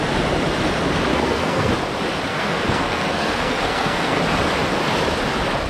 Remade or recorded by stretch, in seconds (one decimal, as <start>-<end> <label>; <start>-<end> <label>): 0.0-1.1 recorded; 1.1-1.7 remade; 1.7-2.3 recorded; 2.3-4.2 remade; 4.2-5.7 recorded